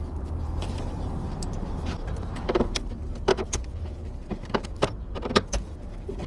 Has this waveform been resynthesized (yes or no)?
yes